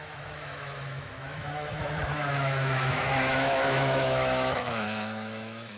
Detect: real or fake fake